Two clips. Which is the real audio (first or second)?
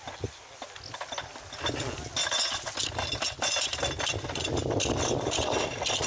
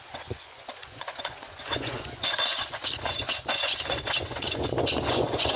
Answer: first